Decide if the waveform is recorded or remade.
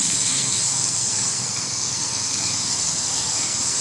remade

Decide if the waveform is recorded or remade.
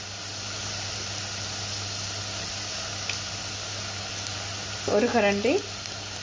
recorded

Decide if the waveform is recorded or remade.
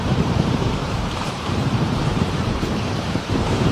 remade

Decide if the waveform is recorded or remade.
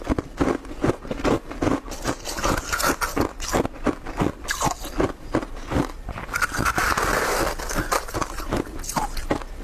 recorded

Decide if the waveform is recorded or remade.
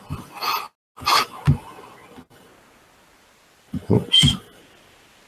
recorded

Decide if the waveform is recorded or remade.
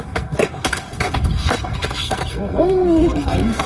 remade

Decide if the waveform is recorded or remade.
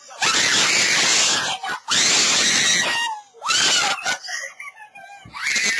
recorded